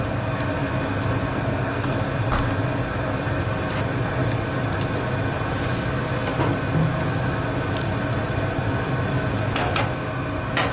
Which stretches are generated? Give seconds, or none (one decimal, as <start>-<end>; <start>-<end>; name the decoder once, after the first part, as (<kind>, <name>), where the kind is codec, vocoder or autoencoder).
1.3-2.0 (codec, SNAC)